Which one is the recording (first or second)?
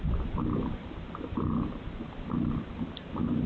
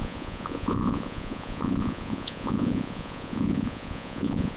first